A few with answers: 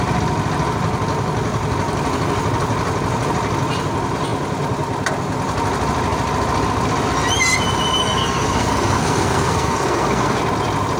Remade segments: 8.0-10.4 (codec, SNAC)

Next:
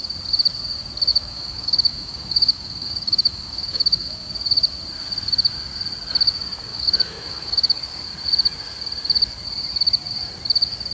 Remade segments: 1.1-4.3 (autoencoder, DAC-VAE); 6.7-7.8

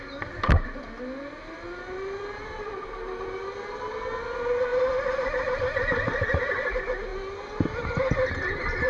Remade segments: none

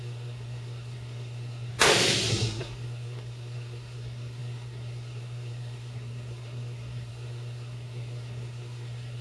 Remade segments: 0.0-1.7 (codec, SNAC); 2.3-9.2

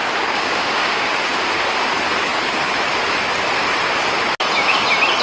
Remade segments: 0.0-1.1 (codec, DAC)

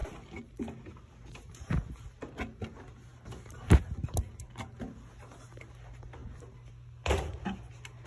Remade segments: none

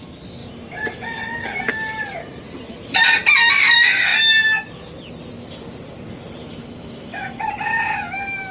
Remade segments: 6.4-7.4 (autoencoder, DAC-VAE)

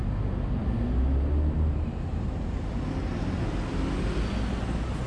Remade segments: none